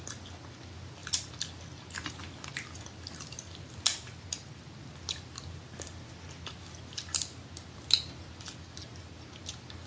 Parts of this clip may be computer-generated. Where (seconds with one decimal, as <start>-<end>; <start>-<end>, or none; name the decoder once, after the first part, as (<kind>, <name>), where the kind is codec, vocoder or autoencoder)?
none